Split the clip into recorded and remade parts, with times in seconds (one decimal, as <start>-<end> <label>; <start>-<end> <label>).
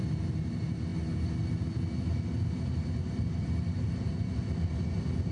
0.0-5.3 recorded